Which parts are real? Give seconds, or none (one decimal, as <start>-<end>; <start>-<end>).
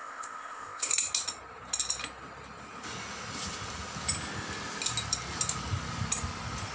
0.9-6.7